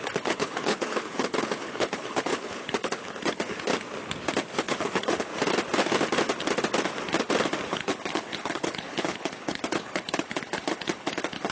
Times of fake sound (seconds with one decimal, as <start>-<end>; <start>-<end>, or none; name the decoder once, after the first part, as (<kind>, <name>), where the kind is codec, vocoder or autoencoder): 0.0-3.7 (codec, HILCodec); 4.6-5.3; 7.7-11.5

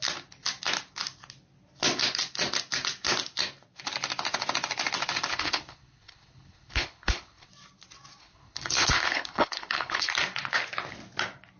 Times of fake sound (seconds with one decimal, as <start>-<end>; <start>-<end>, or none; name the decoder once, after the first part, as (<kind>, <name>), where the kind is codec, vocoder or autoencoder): 5.3-7.5 (codec, HILCodec); 8.2-10.1

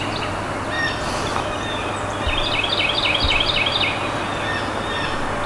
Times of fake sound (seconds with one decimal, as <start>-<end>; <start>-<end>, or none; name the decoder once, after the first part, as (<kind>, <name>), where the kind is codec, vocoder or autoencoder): none

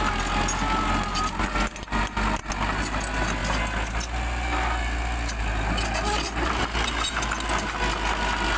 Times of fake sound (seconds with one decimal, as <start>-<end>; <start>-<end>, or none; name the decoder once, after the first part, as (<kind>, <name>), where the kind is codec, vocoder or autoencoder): none

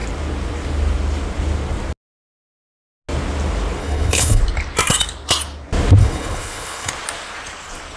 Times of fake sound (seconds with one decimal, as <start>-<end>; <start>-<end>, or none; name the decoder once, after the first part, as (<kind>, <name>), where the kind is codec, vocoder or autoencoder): 3.8-4.4 (codec, HILCodec); 6.0-6.9

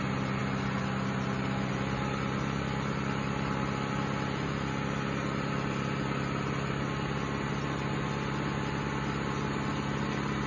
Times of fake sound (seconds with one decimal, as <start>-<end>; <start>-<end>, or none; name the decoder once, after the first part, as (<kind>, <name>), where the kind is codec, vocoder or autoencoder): none

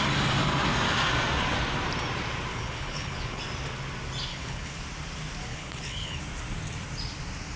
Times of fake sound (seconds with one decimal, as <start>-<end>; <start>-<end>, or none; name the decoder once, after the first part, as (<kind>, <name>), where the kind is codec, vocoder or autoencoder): 2.5-3.4 (codec, HILCodec); 4.3-4.8; 5.5-6.2